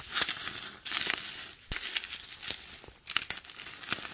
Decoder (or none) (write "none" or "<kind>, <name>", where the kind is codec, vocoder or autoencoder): none